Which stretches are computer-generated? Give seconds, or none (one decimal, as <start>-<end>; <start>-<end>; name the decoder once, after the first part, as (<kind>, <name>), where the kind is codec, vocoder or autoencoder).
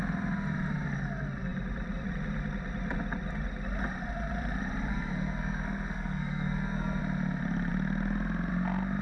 4.9-7.0 (codec, SNAC)